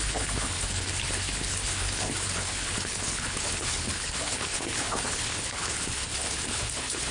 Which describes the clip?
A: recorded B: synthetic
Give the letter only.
B